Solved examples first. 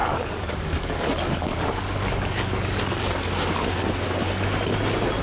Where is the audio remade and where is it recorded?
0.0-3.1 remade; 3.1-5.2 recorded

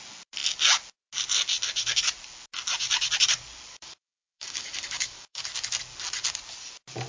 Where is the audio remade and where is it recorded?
0.0-3.7 recorded; 3.7-5.4 remade; 5.4-7.1 recorded

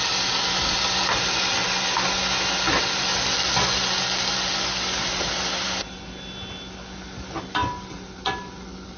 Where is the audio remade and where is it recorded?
0.0-9.0 recorded